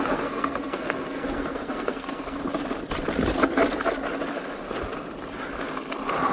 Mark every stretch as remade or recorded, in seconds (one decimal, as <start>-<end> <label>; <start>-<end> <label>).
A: 0.0-2.4 remade; 2.4-6.3 recorded